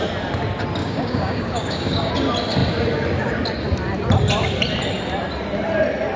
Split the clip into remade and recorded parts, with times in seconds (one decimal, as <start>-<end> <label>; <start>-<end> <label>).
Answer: 0.0-0.8 recorded; 0.8-2.1 remade; 2.1-6.2 recorded